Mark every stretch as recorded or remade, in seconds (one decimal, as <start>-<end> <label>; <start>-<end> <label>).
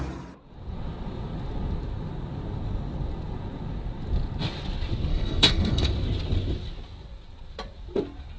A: 0.0-5.1 recorded; 5.1-5.9 remade; 5.9-8.4 recorded